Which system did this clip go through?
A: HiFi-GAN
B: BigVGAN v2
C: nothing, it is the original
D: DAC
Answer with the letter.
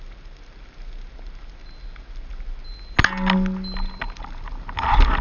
C